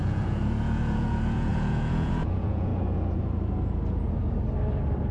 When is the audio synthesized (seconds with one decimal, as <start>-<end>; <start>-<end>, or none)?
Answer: 0.0-2.7